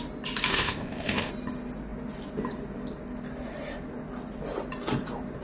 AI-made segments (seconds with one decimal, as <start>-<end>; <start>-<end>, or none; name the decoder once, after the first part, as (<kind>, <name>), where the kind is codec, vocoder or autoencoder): 0.5-1.3 (codec, ZipCodec)